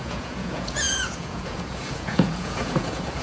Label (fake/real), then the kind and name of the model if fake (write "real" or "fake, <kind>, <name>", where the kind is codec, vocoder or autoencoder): fake, vocoder, Vocos